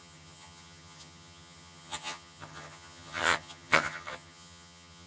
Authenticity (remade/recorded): remade